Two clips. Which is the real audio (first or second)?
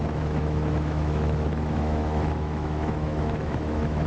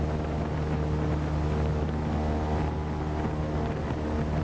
second